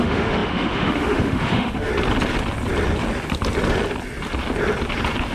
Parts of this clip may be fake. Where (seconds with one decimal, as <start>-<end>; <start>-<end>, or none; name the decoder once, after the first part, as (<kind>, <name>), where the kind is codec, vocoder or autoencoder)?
0.0-1.9 (autoencoder, DAC-VAE)

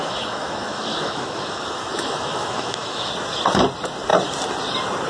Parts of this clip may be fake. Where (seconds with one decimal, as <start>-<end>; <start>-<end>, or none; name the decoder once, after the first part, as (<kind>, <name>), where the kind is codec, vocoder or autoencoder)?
0.0-3.1 (autoencoder, DAC-VAE)

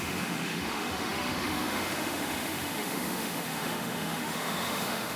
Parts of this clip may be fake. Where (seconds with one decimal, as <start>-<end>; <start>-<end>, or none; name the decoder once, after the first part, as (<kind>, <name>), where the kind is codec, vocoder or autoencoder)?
0.0-5.2 (autoencoder, DAC-VAE)

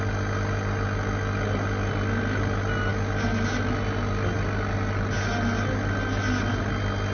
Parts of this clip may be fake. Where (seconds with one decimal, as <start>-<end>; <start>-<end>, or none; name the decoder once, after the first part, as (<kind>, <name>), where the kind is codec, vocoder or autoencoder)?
none

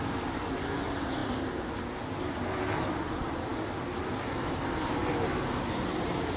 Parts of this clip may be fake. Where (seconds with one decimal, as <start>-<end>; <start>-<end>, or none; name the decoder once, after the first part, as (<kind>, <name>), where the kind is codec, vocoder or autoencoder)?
none

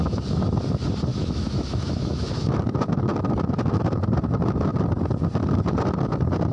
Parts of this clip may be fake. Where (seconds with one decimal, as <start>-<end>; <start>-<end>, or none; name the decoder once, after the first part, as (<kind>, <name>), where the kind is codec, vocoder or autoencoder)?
1.1-2.6 (autoencoder, DAC-VAE)